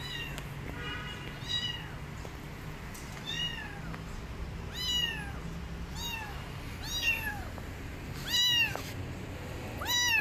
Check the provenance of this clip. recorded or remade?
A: recorded